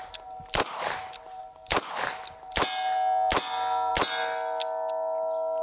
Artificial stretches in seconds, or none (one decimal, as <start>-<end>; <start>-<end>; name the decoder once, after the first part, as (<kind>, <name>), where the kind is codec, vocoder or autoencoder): none